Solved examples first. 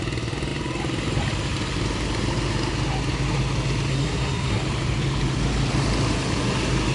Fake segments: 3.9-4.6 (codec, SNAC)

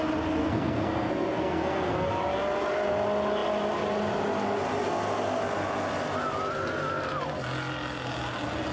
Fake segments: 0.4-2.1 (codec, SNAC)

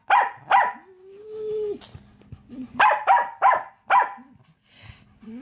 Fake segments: none

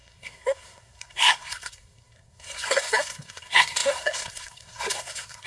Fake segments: 0.0-5.5 (codec, SNAC)

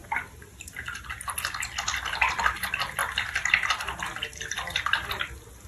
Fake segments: none